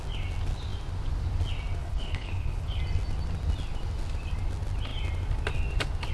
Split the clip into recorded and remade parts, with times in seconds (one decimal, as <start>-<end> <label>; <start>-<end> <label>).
0.0-1.8 recorded; 1.8-2.8 remade; 2.8-6.1 recorded